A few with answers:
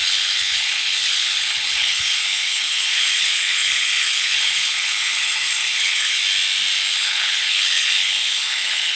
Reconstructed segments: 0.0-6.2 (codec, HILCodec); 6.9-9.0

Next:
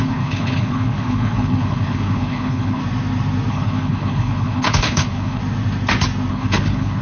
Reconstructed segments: 0.0-2.8 (codec, HILCodec); 3.5-5.4; 6.3-7.0

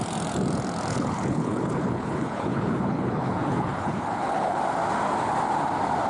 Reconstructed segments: 0.9-4.6 (codec, HILCodec)

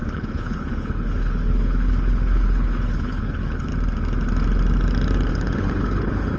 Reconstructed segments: 0.0-3.7 (codec, HILCodec); 5.3-6.4

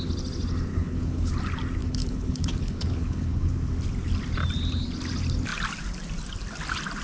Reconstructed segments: 0.7-1.3 (codec, HILCodec); 1.8-3.5

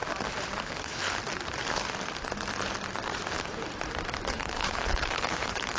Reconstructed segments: 0.6-1.0 (codec, HILCodec); 4.3-5.8

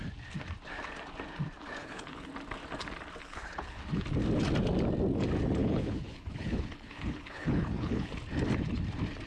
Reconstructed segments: 1.8-2.3 (codec, HILCodec); 3.2-3.8; 5.6-8.1